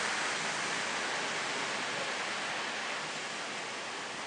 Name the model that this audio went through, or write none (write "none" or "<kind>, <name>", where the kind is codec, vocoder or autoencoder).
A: none